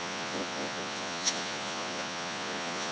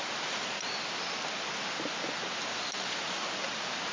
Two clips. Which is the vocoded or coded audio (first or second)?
first